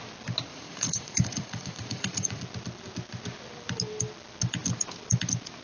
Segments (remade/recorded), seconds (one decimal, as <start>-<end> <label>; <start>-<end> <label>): 0.0-0.5 recorded; 0.5-2.4 remade; 2.4-5.6 recorded